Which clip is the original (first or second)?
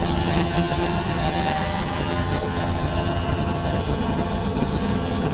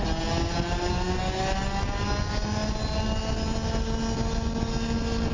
second